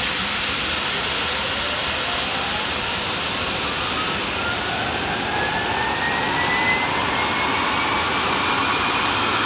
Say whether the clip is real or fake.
real